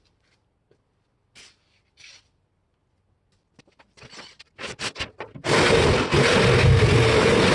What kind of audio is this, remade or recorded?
recorded